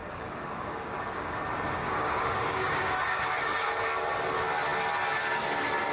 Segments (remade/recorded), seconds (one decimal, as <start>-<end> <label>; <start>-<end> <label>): 0.0-1.4 remade; 1.4-1.8 recorded; 1.8-3.7 remade; 3.7-5.9 recorded